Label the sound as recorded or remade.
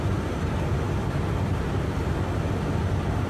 recorded